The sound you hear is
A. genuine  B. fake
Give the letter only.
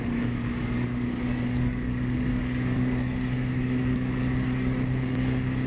B